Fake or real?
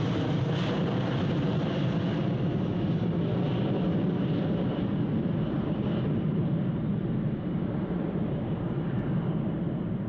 fake